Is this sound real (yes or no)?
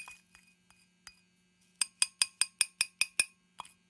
yes